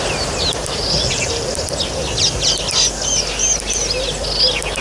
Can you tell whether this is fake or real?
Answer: real